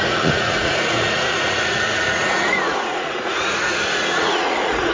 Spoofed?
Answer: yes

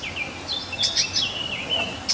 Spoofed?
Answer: no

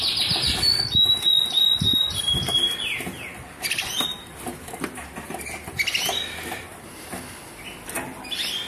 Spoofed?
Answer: no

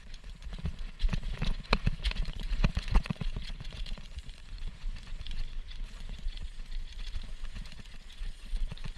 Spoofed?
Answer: yes